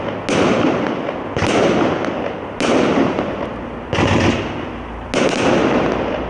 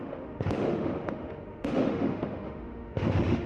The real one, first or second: first